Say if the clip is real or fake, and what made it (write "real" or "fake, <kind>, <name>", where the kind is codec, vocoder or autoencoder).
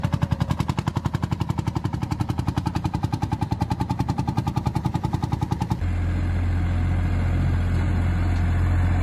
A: real